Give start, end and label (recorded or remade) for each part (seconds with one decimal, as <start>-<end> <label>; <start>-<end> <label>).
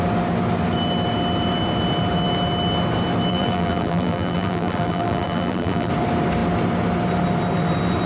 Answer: 0.0-3.3 recorded; 3.3-5.9 remade; 5.9-8.1 recorded